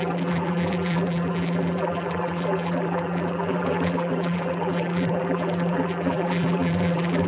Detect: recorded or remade remade